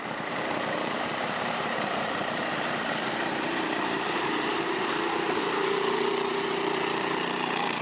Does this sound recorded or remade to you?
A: remade